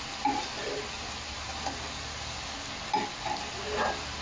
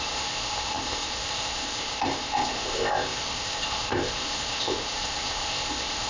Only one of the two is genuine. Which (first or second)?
first